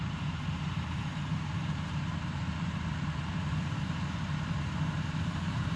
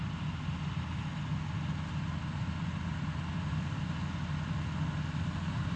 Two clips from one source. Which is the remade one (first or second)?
first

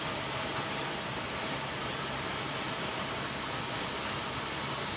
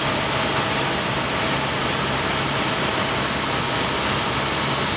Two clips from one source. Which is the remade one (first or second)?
first